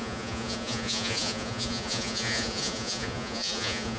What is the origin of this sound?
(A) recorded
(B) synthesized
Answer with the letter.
B